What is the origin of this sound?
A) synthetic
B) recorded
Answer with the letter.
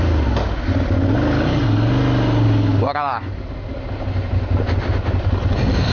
B